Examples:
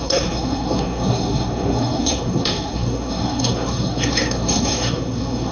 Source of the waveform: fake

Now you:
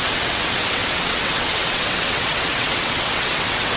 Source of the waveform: fake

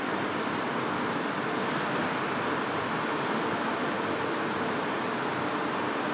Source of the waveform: real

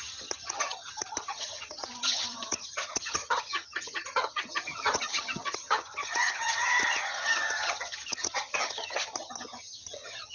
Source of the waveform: fake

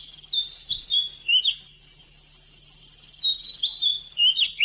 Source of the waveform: real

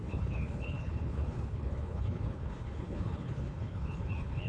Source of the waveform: fake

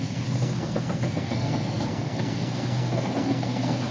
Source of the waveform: fake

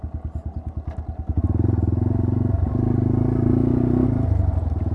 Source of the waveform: real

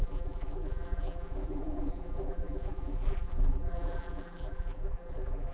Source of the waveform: fake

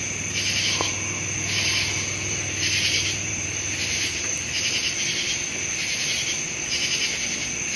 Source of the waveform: real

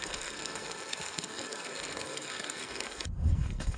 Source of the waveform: fake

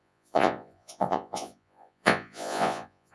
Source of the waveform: fake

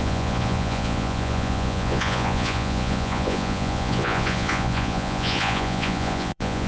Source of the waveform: fake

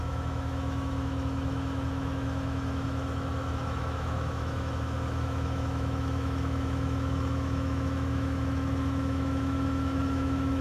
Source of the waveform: fake